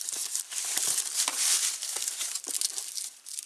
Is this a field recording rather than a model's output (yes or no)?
yes